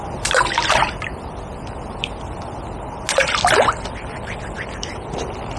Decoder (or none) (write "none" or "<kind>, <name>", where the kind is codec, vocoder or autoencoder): none